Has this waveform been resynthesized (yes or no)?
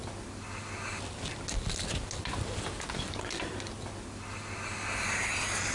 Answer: no